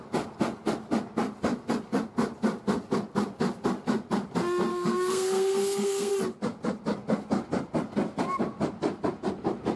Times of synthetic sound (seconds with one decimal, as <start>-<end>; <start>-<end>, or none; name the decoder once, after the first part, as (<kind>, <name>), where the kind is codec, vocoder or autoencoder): 4.7-6.1 (codec, SNAC)